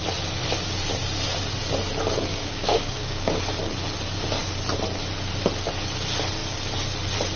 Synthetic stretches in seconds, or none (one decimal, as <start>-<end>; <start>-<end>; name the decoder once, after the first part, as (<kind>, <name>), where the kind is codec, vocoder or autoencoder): 2.3-3.4 (codec, DAC)